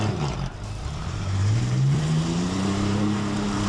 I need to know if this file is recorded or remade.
remade